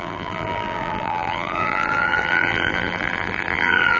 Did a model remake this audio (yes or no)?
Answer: yes